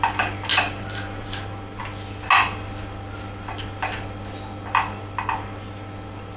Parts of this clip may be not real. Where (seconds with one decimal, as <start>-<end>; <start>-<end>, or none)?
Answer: 0.5-1.8